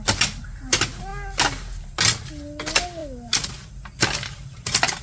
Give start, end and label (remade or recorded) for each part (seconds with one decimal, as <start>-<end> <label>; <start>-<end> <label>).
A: 0.0-5.0 recorded